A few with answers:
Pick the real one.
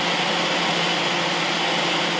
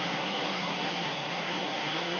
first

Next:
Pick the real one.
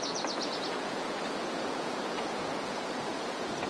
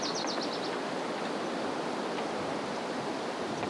second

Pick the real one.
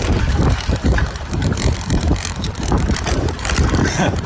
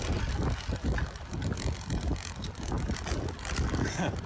second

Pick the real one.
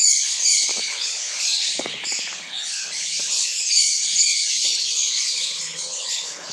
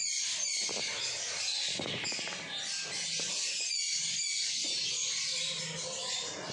second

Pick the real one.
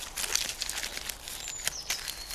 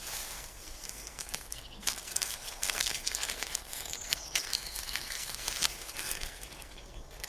first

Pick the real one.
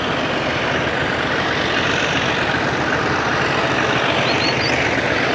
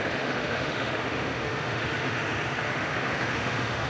first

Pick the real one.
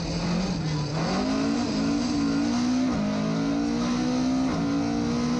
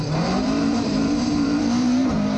first